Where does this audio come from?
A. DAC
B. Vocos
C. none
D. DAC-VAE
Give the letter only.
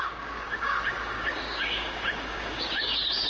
A